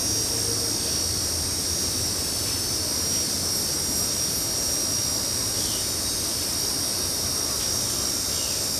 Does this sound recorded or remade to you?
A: recorded